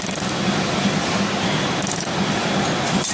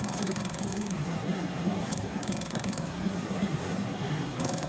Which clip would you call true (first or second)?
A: first